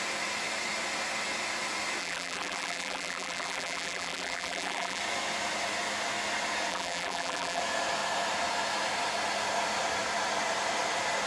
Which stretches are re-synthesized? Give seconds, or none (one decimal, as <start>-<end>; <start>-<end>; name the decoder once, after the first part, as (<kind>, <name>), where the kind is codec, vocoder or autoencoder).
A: 2.0-5.0 (vocoder, BigVGAN v2); 6.7-7.6